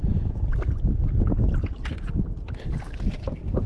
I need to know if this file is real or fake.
real